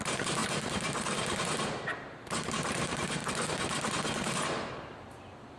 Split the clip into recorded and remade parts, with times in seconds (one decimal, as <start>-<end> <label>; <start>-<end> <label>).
0.0-3.2 remade; 3.2-4.7 recorded; 4.7-5.6 remade